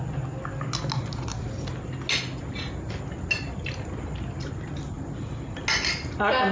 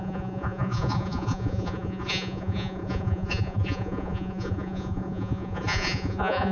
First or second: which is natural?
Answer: first